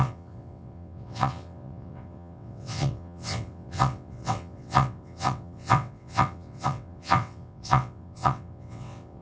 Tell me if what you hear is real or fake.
fake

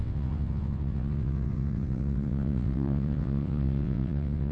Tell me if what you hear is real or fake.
fake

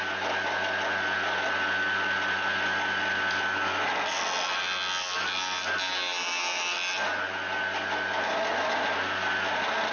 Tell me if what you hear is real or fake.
real